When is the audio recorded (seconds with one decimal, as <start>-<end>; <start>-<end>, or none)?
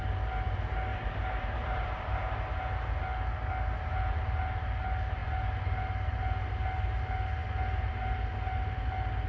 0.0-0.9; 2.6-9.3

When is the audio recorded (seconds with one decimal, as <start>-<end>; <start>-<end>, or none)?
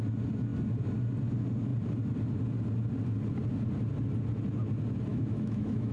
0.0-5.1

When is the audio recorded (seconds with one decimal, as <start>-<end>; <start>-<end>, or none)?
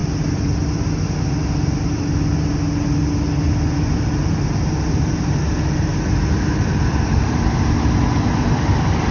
0.0-4.9; 5.9-6.7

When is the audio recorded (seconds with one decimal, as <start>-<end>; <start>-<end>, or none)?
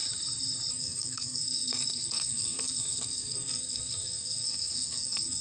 0.0-0.7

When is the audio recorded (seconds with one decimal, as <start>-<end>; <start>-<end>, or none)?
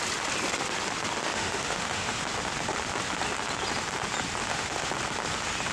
0.0-1.2; 2.2-4.4; 4.9-5.7